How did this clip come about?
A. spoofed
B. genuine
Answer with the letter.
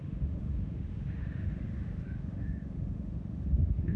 A